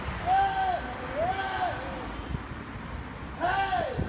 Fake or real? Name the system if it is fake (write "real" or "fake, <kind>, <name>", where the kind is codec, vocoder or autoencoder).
real